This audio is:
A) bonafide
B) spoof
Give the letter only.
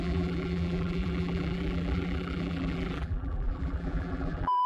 B